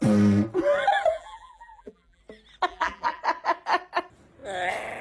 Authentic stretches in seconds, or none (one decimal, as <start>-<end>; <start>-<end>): 0.0-1.1; 2.2-2.7; 3.2-5.0